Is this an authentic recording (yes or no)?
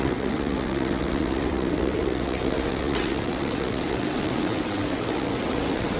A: no